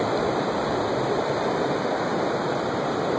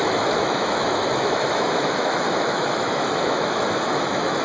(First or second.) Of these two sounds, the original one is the first